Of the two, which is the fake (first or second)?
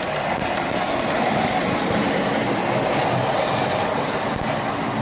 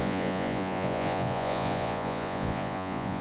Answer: second